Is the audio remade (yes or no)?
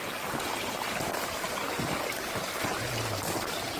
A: no